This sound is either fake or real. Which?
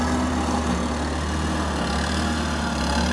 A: real